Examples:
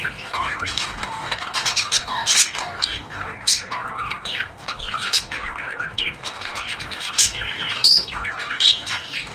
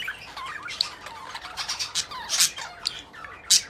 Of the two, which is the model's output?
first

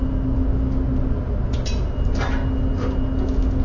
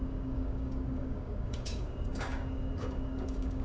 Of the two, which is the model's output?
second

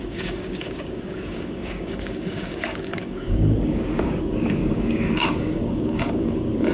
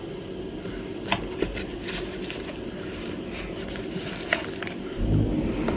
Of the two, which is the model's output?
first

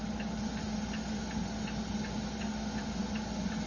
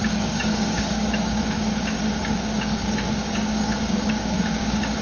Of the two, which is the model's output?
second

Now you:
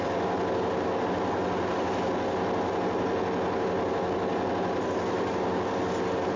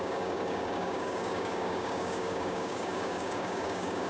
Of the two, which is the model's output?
second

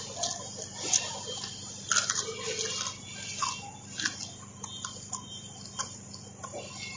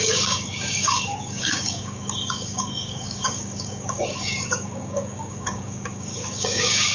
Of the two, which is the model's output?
second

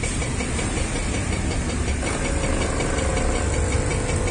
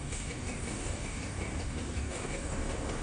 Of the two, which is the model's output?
second